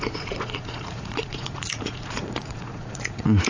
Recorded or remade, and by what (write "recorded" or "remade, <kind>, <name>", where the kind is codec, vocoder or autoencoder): remade, vocoder, Vocos